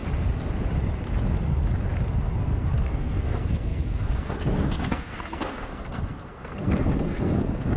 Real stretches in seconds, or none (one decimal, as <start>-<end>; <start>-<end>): 0.0-2.4